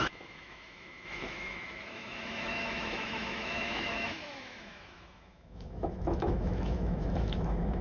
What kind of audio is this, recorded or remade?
remade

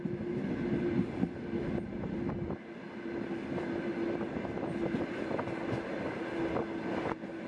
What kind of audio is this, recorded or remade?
recorded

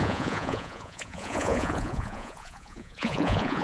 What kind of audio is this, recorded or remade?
remade